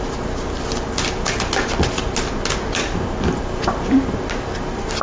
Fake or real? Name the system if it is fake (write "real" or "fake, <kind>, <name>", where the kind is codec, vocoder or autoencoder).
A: real